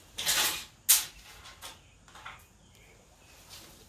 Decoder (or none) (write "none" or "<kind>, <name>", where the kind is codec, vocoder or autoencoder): none